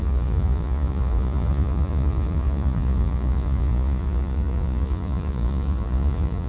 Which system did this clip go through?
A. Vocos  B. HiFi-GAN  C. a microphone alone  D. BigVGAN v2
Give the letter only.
A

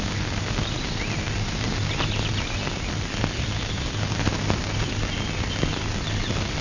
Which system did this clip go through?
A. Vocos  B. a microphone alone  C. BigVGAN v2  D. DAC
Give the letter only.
B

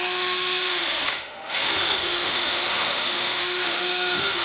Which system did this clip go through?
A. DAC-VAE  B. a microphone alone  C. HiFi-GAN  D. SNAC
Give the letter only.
A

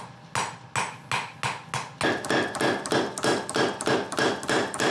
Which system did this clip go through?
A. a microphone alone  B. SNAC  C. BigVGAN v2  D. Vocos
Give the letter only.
A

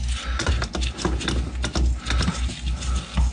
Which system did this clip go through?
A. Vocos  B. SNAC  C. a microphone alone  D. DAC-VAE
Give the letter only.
C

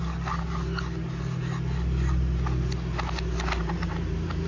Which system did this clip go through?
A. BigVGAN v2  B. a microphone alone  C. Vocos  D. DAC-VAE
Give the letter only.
B